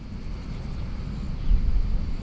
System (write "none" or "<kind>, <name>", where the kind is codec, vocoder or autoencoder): none